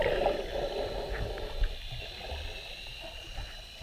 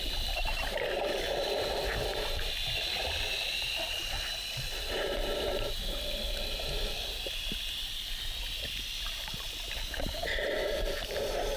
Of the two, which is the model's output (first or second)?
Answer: second